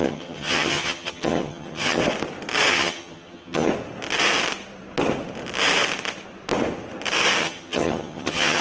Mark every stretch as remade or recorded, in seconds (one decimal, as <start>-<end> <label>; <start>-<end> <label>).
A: 0.0-2.0 remade; 2.0-2.7 recorded; 2.7-3.7 remade; 3.7-7.4 recorded; 7.4-8.6 remade